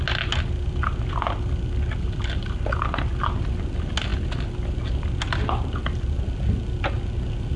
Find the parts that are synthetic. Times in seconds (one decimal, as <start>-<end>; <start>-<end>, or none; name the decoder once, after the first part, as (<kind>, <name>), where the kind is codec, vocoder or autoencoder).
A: none